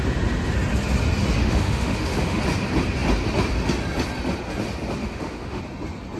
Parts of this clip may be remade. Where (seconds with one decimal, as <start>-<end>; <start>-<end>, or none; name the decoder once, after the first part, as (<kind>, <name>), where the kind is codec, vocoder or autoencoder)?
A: 1.4-2.4 (autoencoder, DAC-VAE); 5.0-5.6